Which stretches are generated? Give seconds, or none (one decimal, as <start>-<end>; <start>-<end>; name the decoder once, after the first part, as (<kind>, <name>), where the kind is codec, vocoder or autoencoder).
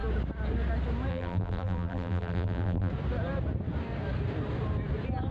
1.1-2.9 (vocoder, BigVGAN v2)